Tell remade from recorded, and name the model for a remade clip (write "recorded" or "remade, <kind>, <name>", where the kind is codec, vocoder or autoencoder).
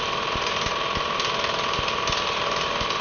remade, vocoder, BigVGAN v2